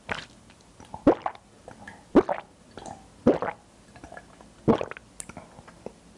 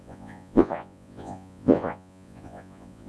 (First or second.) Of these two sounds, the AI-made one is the second